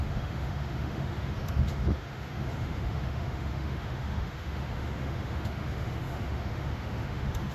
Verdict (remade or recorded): remade